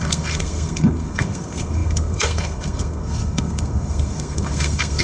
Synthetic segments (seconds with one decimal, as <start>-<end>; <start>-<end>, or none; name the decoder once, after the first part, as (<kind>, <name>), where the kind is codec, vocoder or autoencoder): 0.0-5.0 (codec, SNAC)